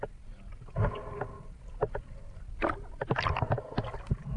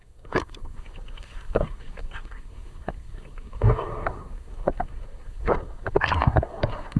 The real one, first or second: first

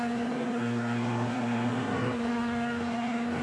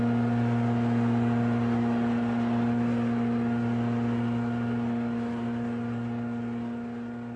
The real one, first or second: second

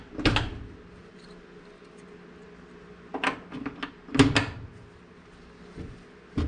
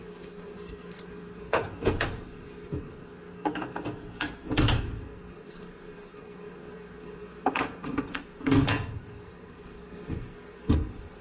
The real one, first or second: first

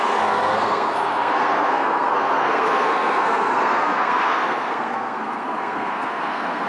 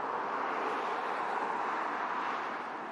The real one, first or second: second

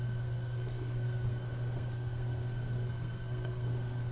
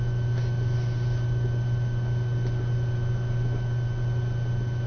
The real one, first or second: second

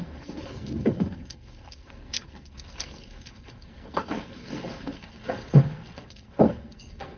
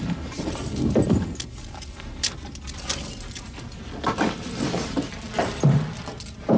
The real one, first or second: second